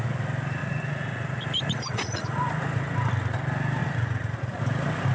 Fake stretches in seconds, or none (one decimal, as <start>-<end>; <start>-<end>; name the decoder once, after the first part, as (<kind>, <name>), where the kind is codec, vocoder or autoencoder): 0.6-1.4 (vocoder, Vocos); 1.9-2.5; 3.8-4.6